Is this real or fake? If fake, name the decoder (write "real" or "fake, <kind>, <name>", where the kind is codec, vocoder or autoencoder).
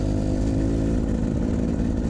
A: real